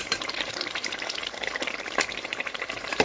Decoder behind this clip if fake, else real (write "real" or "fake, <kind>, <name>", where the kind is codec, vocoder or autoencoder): fake, vocoder, BigVGAN v2